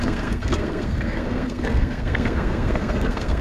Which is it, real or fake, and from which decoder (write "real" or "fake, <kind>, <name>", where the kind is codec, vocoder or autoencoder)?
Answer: fake, codec, SNAC